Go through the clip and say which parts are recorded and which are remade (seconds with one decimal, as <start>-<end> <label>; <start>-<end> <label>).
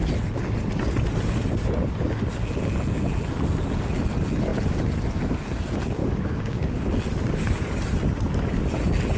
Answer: 0.0-6.0 recorded; 6.0-6.8 remade; 6.8-9.2 recorded